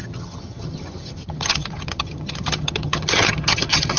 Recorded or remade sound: remade